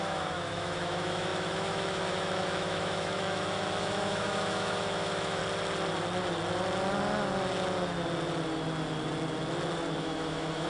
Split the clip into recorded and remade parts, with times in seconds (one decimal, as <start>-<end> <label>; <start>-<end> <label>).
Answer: 0.0-5.4 remade; 5.4-10.0 recorded; 10.0-10.7 remade